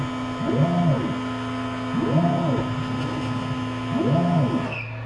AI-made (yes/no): no